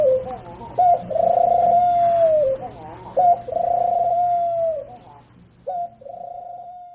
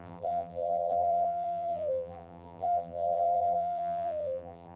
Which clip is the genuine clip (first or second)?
first